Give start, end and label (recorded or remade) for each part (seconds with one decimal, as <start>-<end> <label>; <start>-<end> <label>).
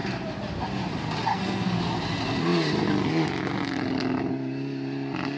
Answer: 0.0-1.3 recorded; 1.3-1.8 remade; 1.8-5.4 recorded